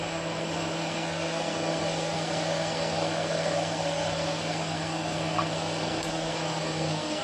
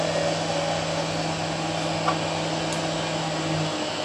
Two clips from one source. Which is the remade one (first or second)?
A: first